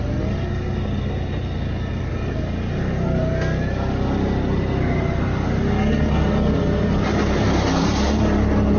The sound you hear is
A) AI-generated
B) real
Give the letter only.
B